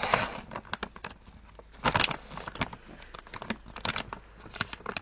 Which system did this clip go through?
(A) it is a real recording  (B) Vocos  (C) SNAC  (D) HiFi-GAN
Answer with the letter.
A